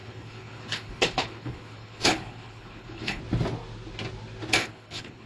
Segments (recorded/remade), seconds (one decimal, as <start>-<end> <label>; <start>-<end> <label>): 0.0-3.2 remade; 3.2-4.6 recorded; 4.6-5.3 remade